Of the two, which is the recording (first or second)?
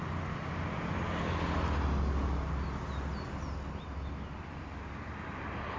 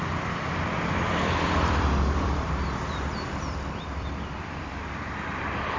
first